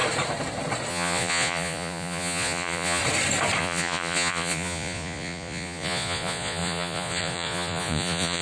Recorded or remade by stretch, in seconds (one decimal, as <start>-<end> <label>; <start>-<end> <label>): 0.0-0.9 recorded; 0.9-3.0 remade; 3.0-3.6 recorded; 3.6-8.4 remade